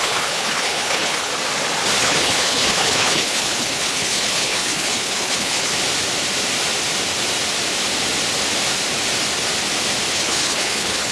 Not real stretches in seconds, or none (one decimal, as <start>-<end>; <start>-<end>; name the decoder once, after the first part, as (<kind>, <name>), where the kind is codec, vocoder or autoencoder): 0.0-1.3 (codec, HILCodec); 2.0-5.7; 10.1-11.1